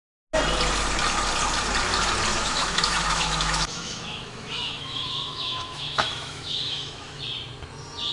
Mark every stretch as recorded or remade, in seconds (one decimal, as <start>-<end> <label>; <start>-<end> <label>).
0.0-2.3 recorded; 2.3-7.2 remade; 7.2-8.1 recorded